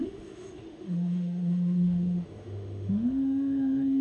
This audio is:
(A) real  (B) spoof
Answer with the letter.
B